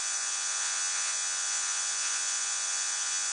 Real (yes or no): no